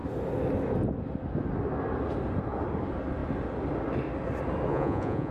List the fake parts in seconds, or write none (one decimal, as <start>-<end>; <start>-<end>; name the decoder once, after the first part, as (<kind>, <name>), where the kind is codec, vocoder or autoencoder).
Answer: 4.7-5.3 (vocoder, Vocos)